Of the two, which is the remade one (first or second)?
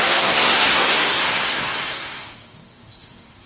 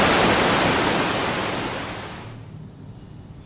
first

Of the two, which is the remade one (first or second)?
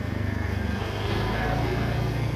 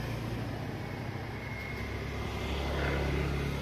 first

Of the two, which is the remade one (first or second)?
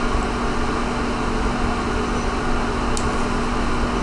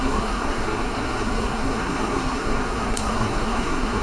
second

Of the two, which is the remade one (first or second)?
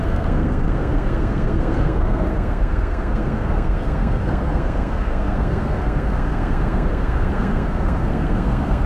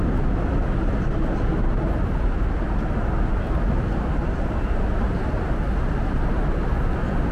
first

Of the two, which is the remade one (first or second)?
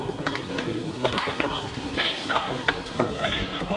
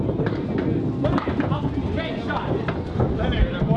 first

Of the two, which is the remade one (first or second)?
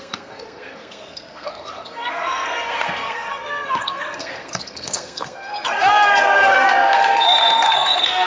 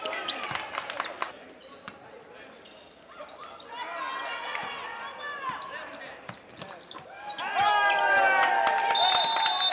first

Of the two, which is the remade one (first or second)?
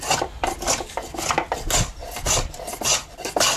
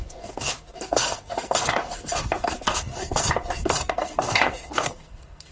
second